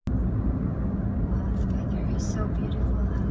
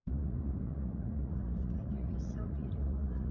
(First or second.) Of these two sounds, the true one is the first